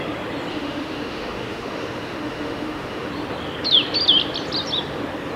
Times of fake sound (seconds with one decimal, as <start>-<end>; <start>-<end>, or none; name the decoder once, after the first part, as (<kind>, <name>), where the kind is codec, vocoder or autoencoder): 0.5-3.1 (autoencoder, DAC-VAE)